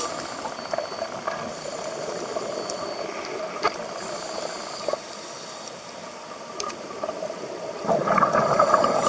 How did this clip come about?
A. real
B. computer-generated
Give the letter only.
A